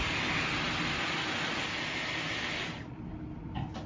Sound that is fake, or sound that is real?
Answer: real